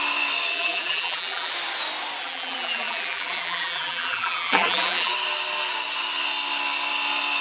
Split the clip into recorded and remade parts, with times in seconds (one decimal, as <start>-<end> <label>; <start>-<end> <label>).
0.0-0.5 recorded; 0.5-1.5 remade; 1.5-2.2 recorded; 2.2-5.1 remade; 5.1-7.4 recorded